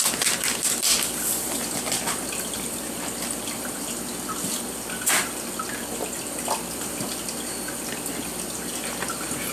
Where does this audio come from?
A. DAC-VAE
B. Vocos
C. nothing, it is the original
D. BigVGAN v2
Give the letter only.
C